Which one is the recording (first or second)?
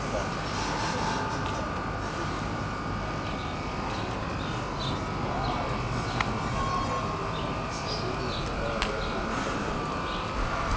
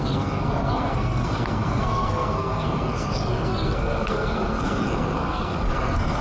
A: first